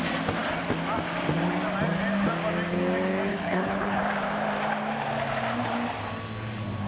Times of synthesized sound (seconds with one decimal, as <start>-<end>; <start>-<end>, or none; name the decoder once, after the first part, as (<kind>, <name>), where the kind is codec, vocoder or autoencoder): 3.3-4.0 (codec, HILCodec)